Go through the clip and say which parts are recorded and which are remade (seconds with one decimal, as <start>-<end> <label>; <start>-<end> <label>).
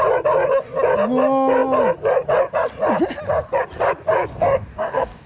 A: 0.0-4.3 recorded; 4.3-5.3 remade